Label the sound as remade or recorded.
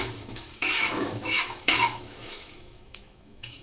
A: remade